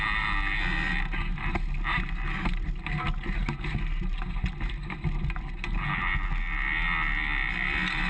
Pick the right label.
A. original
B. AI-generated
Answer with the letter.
A